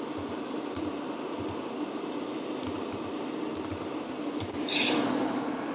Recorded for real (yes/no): yes